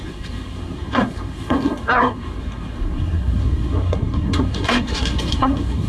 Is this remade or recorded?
remade